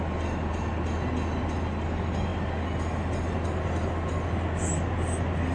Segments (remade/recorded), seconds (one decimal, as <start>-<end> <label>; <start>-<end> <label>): 0.0-5.5 recorded